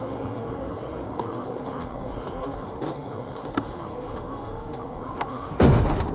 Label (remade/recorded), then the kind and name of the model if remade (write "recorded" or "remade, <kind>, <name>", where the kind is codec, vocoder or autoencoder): remade, autoencoder, DAC-VAE